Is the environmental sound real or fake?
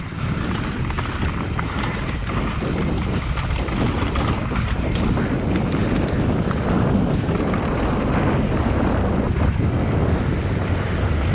real